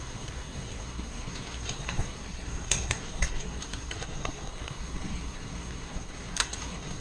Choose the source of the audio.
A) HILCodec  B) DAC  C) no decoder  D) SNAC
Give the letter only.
D